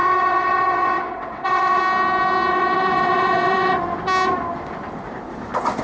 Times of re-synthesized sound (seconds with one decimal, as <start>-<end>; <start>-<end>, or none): 0.0-1.8; 2.5-3.8

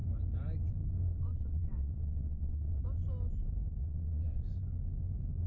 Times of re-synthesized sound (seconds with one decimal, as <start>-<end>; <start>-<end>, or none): 1.3-2.8; 3.8-4.4

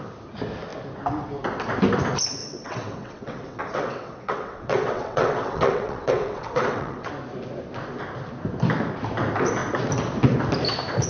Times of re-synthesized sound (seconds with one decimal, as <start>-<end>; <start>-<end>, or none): 2.4-7.1

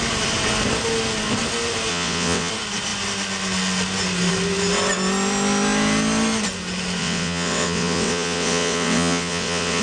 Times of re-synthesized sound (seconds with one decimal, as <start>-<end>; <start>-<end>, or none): 1.9-2.5; 7.0-9.8

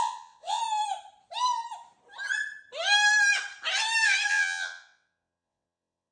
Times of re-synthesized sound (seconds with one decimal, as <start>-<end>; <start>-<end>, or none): 0.0-0.6; 4.3-6.1